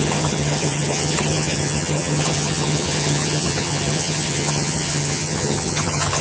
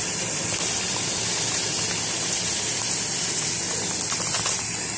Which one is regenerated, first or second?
first